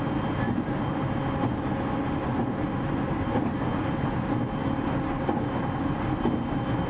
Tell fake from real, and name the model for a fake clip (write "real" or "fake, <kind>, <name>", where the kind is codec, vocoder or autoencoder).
real